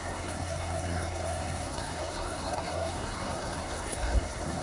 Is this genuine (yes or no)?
no